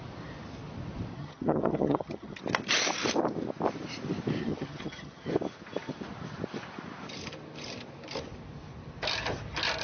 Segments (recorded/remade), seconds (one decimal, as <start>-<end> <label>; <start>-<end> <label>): 0.0-1.1 recorded; 1.1-2.4 remade; 2.4-4.4 recorded; 4.4-5.3 remade; 5.3-9.8 recorded